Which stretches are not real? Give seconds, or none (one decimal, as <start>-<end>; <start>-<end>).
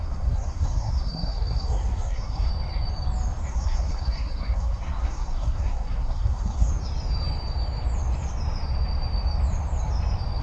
0.0-2.5; 3.5-6.7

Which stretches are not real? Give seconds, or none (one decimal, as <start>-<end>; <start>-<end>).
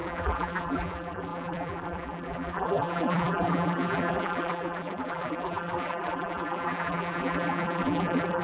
0.0-8.4